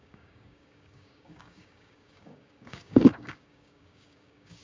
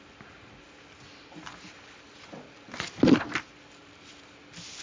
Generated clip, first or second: first